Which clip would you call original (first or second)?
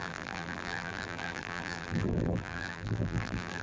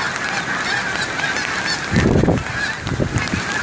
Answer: second